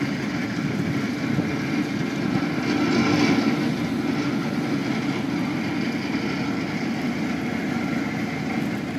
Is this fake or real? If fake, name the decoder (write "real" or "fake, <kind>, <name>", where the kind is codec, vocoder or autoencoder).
real